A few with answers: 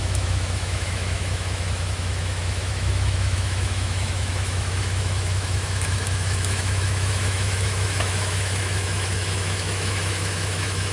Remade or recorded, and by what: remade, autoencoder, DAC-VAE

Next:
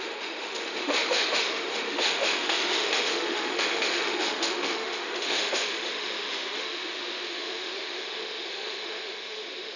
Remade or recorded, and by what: remade, autoencoder, DAC-VAE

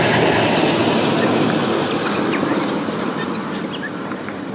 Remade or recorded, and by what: recorded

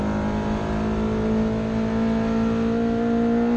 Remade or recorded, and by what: recorded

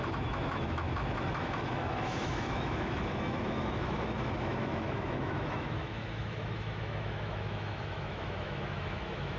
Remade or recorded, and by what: remade, autoencoder, DAC-VAE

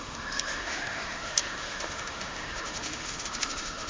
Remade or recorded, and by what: remade, autoencoder, DAC-VAE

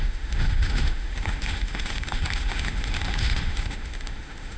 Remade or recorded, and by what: remade, autoencoder, DAC-VAE